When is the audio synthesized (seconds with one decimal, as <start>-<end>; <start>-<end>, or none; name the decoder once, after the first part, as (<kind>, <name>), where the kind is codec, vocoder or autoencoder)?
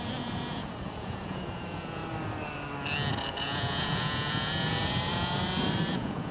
0.0-2.0 (vocoder, Vocos); 3.1-6.3